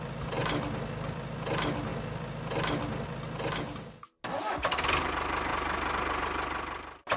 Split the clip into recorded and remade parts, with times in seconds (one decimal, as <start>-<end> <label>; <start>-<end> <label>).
0.0-7.2 recorded